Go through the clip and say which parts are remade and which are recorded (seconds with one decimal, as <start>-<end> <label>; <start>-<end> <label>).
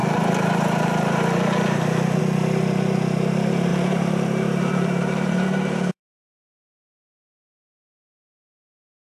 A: 0.0-2.2 remade; 2.2-3.7 recorded; 3.7-6.0 remade; 6.0-9.1 recorded